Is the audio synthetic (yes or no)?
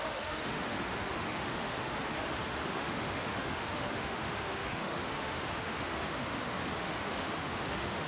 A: yes